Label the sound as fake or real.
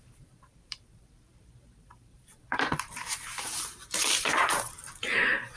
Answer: fake